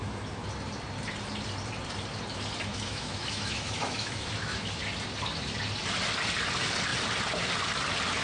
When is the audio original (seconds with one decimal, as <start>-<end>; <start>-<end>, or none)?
0.0-2.7; 4.8-8.2